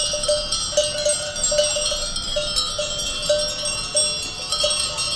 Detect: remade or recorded recorded